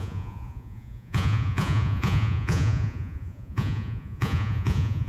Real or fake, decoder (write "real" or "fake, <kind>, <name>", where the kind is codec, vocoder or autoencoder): fake, vocoder, Vocos